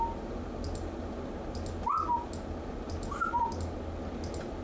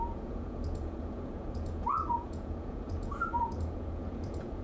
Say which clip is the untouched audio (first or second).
first